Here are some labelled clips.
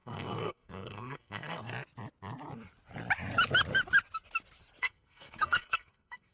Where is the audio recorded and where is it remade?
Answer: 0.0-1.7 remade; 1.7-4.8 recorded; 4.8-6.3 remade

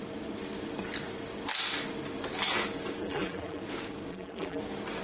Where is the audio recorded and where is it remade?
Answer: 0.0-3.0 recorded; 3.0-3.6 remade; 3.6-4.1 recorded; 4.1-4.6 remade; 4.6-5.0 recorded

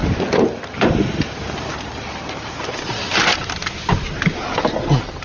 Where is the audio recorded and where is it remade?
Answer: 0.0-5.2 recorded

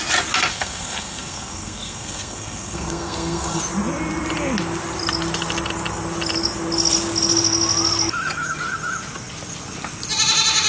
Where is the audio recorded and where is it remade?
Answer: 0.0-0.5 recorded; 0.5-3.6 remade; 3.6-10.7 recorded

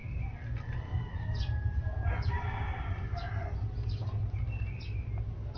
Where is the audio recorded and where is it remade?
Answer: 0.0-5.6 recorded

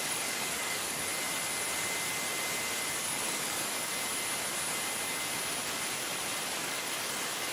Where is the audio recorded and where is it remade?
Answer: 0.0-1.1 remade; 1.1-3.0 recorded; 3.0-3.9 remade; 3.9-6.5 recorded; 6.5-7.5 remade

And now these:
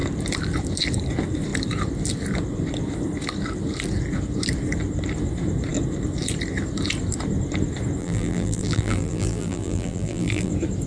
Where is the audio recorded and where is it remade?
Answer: 0.0-8.0 recorded; 8.0-10.5 remade; 10.5-10.9 recorded

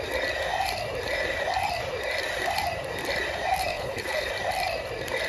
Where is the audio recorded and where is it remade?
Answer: 0.0-3.7 recorded; 3.7-4.3 remade; 4.3-5.3 recorded